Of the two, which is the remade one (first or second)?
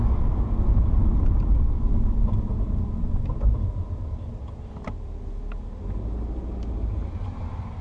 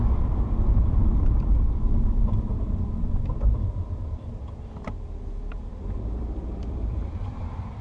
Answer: second